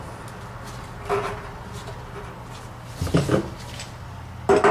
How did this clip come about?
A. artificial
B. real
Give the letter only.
B